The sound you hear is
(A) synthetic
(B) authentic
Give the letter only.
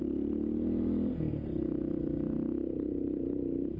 B